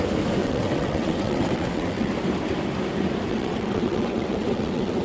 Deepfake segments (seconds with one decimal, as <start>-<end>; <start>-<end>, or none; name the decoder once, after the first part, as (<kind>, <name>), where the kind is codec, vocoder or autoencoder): 0.4-2.1 (vocoder, WaveNeXt); 3.3-5.0